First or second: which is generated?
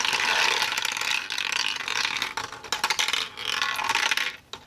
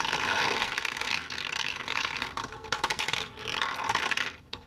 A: second